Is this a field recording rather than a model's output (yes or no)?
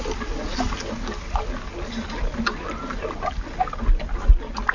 yes